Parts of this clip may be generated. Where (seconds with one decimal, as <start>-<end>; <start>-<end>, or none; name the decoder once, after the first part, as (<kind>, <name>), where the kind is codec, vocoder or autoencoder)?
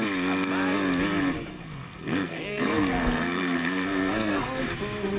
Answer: 1.5-4.6 (codec, SNAC)